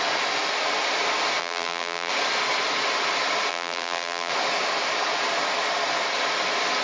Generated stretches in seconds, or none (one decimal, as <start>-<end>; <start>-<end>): 1.4-2.1; 3.5-4.3